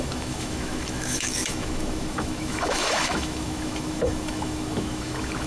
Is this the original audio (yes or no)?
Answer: no